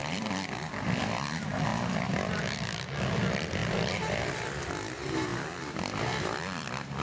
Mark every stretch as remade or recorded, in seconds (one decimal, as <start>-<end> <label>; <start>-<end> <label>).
0.0-1.7 remade; 1.7-2.4 recorded; 2.4-7.0 remade